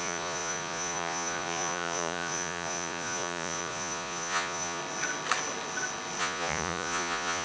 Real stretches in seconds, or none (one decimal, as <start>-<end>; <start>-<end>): 4.8-6.2